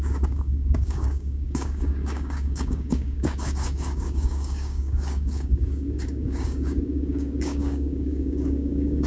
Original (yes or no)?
no